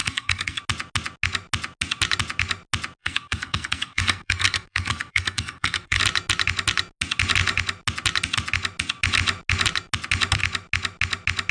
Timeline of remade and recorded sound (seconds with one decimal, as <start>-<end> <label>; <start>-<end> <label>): 0.0-0.6 remade; 0.6-3.0 recorded; 3.0-6.0 remade; 6.0-11.5 recorded